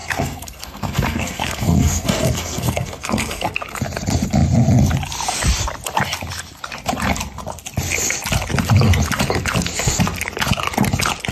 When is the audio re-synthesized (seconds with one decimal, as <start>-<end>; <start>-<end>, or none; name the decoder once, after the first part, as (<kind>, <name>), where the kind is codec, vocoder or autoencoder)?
0.0-3.5 (codec, SNAC)